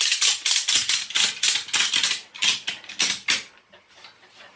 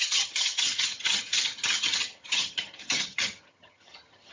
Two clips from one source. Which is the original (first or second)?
first